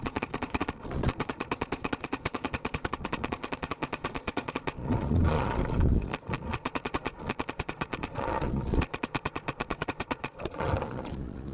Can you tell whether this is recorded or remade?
remade